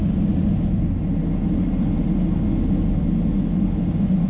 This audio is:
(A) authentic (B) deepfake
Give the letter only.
A